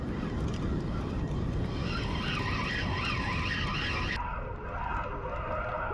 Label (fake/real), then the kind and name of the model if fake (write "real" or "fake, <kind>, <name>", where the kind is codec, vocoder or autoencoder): real